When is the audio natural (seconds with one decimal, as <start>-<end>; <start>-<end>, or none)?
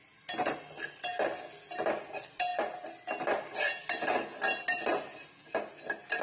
0.0-6.2